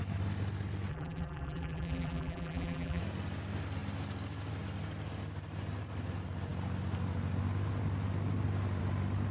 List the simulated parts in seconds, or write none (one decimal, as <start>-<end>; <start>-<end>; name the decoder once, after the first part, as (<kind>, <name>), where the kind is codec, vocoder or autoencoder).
0.9-3.0 (vocoder, BigVGAN v2)